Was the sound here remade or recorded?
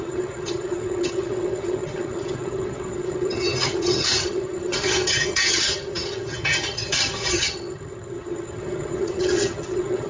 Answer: remade